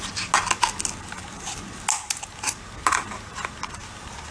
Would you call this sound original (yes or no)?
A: yes